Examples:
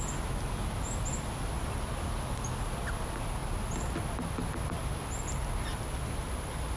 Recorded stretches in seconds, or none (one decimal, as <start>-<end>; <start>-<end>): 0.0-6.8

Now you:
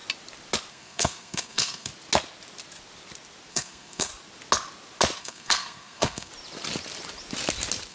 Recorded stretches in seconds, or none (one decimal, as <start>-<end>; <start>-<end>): 0.0-0.7; 1.9-3.5; 4.1-5.2; 6.3-7.9

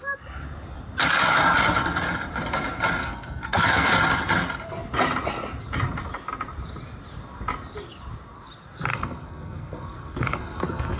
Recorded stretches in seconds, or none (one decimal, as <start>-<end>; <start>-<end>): 0.0-3.0; 3.9-8.9